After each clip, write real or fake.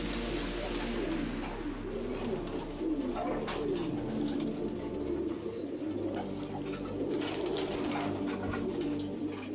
real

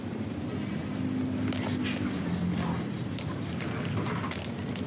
real